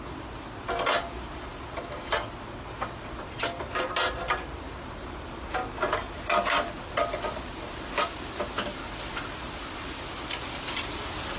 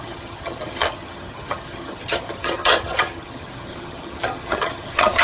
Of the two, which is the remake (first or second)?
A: second